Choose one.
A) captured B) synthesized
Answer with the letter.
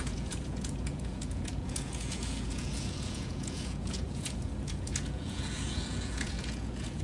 B